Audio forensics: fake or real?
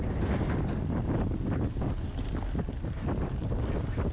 real